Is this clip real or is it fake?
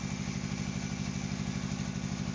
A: real